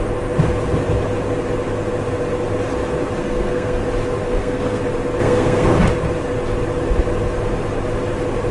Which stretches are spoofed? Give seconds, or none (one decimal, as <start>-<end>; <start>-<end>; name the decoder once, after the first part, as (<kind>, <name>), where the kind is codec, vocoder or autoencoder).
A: 3.2-3.8 (codec, SNAC); 4.3-4.8; 5.2-5.8